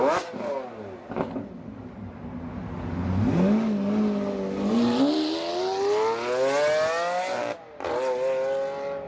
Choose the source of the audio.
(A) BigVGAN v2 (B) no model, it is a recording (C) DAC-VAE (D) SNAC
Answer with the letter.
B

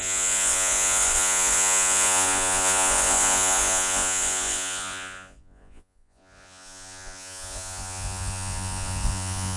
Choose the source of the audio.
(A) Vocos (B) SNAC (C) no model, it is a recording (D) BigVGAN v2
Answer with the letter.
A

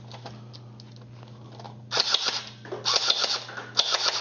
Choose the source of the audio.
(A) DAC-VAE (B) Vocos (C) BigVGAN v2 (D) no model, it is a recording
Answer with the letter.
D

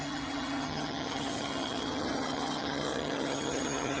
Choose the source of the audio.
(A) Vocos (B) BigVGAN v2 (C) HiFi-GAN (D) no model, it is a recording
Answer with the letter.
C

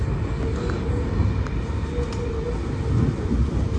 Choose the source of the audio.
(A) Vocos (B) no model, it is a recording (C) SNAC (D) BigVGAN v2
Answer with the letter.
B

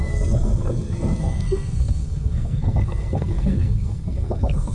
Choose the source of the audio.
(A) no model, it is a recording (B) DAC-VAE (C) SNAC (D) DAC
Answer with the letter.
C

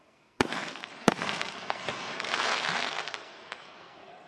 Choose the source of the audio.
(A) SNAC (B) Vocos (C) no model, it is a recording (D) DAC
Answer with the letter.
A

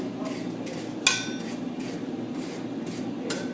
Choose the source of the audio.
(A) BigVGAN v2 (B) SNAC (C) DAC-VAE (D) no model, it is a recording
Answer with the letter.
D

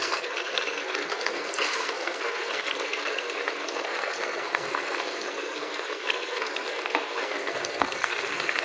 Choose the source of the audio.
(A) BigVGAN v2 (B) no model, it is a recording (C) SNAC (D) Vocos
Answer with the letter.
C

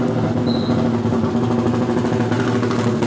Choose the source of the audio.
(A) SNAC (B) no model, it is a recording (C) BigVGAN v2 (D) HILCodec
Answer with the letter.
B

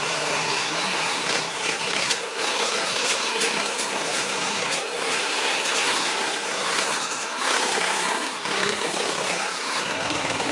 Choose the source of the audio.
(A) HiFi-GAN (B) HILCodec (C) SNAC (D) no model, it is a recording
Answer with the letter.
C